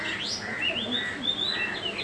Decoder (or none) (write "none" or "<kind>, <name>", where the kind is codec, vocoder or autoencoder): none